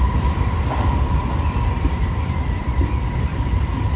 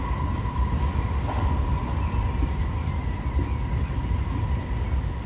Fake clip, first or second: first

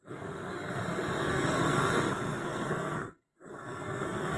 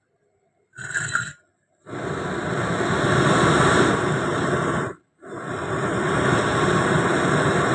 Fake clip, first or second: first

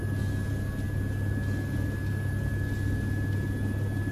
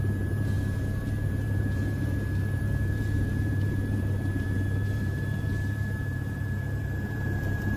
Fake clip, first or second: second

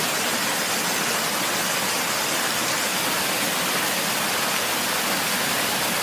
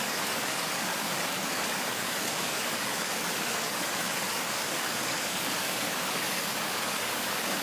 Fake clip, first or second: second